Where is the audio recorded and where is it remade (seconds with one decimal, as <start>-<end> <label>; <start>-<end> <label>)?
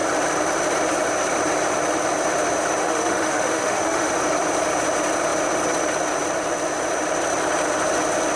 0.0-2.8 recorded; 2.8-4.1 remade; 4.1-8.4 recorded